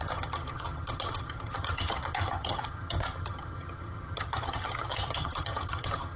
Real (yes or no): no